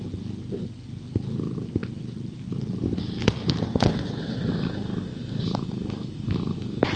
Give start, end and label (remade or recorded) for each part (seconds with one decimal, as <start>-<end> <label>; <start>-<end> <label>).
0.0-3.6 recorded; 3.6-4.5 remade; 4.5-7.0 recorded